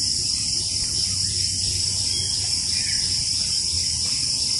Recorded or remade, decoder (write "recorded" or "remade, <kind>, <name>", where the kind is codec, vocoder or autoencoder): recorded